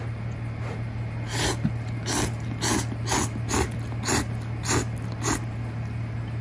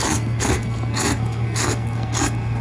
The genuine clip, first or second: first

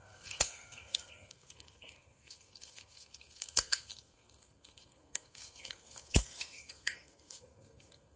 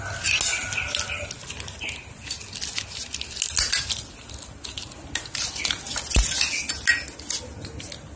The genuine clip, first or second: second